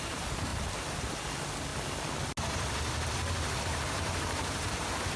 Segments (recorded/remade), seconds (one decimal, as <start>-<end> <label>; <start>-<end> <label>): 0.0-1.7 remade; 1.7-3.6 recorded; 3.6-5.2 remade